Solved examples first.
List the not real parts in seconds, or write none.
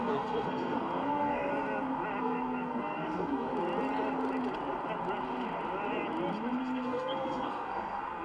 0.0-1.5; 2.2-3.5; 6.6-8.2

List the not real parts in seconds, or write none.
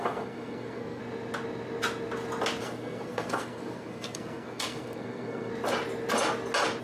0.0-1.0; 2.6-5.5